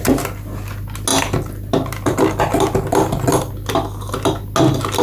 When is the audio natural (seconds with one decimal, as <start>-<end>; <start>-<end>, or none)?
0.0-5.0